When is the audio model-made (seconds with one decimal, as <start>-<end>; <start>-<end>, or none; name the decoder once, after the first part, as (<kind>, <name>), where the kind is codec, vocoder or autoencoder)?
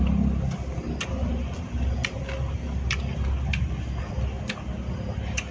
none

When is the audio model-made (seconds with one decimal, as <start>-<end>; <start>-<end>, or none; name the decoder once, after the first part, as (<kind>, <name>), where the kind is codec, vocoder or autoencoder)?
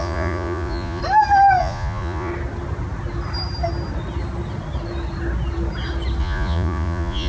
0.0-1.0 (vocoder, Vocos); 1.6-2.3; 6.2-7.3